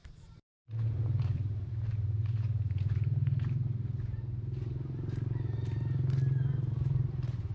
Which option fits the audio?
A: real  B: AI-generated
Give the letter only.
B